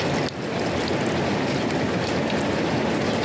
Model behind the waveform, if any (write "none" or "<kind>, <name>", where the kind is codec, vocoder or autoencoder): none